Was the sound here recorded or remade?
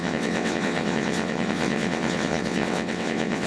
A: remade